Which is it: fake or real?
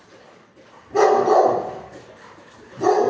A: real